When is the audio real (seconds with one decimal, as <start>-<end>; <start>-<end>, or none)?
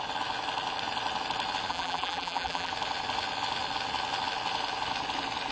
0.0-1.7; 2.7-5.5